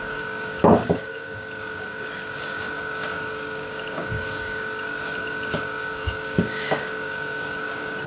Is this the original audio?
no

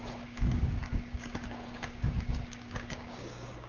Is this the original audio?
no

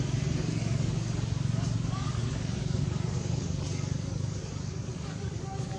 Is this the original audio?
no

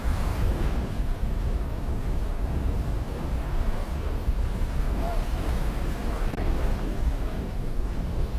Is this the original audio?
no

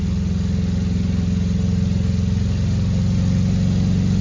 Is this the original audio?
yes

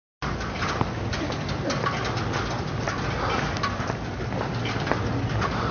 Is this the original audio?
yes